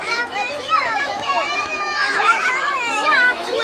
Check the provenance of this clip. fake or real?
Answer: fake